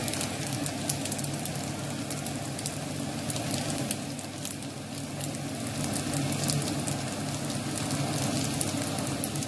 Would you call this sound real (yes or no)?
yes